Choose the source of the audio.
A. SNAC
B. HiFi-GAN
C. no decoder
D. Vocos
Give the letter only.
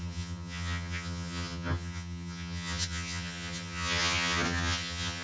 B